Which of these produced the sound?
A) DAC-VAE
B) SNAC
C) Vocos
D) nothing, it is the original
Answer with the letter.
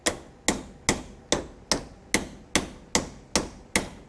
D